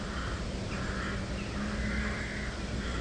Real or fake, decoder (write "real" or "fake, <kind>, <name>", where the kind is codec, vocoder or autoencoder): real